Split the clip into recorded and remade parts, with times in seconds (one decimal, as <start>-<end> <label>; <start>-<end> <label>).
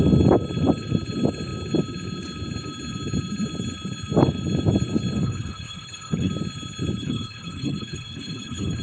0.0-5.2 recorded; 5.2-6.3 remade; 6.3-7.0 recorded; 7.0-8.8 remade